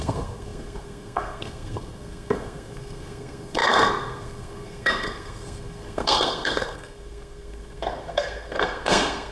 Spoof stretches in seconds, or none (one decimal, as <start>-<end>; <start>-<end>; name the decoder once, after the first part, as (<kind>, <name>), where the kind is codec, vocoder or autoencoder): 0.0-9.3 (codec, SNAC)